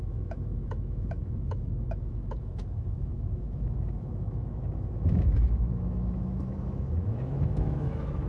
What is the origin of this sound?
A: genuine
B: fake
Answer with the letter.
B